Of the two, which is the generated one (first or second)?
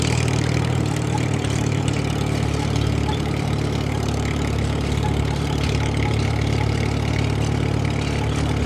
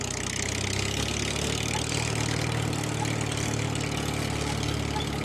first